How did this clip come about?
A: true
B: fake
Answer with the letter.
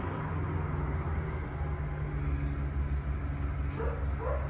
A